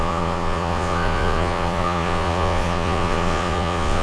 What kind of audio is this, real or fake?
fake